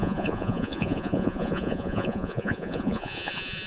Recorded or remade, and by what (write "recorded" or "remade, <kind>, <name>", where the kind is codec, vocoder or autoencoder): remade, vocoder, Vocos